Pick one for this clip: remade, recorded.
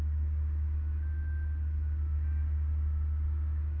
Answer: recorded